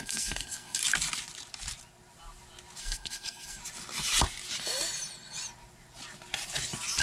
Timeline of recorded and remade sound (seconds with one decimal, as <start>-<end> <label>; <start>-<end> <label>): 0.0-0.8 remade; 0.8-2.8 recorded; 2.8-3.6 remade; 3.6-7.0 recorded